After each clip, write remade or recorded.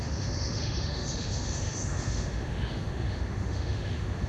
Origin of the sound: remade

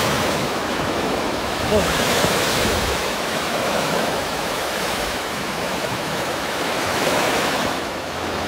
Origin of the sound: remade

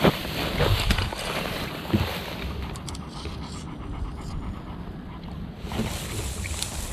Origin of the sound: recorded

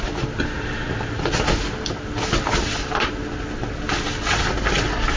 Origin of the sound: recorded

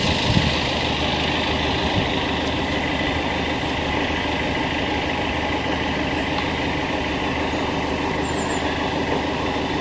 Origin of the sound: recorded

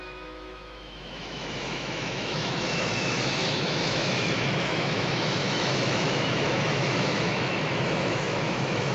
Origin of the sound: remade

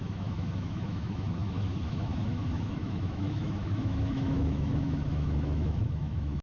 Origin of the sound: remade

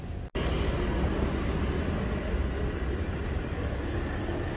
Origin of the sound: recorded